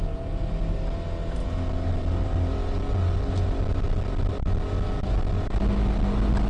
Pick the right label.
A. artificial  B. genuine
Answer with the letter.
B